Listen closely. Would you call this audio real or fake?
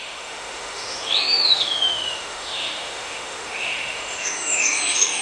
fake